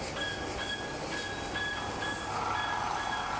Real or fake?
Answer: real